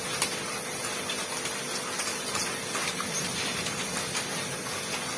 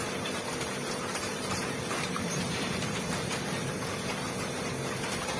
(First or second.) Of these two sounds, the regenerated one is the second